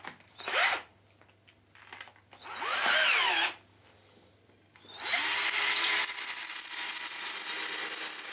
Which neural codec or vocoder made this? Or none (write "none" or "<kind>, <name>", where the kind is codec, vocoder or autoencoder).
none